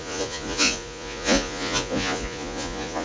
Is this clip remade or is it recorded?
remade